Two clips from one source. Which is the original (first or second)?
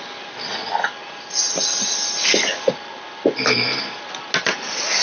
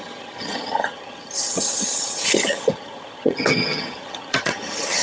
first